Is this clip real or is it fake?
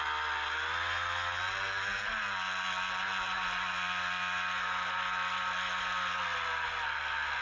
real